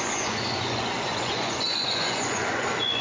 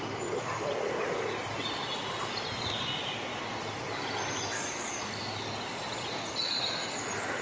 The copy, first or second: first